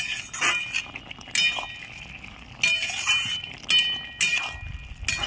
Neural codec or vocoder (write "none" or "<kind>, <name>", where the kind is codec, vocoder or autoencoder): none